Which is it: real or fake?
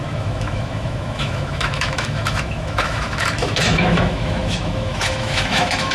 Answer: fake